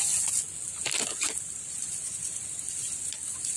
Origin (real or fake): real